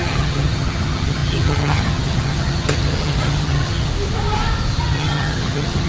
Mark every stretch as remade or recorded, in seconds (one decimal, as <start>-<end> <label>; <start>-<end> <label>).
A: 0.0-3.9 remade; 3.9-4.8 recorded; 4.8-5.9 remade